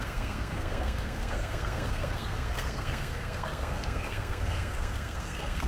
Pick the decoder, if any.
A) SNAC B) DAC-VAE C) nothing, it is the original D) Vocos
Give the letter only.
A